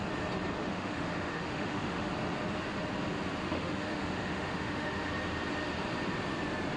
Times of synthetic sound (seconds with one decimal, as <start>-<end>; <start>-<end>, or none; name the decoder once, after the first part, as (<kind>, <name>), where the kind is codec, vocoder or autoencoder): 0.6-2.1 (autoencoder, DAC-VAE); 3.4-5.1